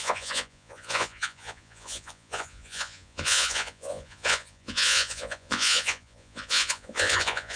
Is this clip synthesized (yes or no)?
yes